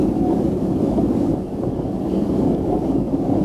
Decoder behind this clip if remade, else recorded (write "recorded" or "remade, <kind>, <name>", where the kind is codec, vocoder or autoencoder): remade, codec, DAC